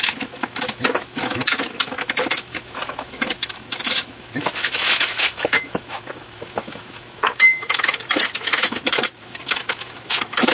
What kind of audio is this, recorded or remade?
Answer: remade